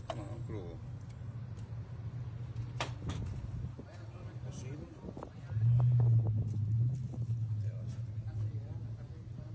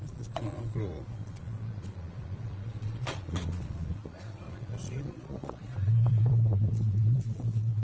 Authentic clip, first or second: first